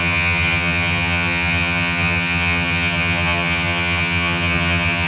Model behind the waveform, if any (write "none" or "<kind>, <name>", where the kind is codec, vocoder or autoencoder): vocoder, HiFi-GAN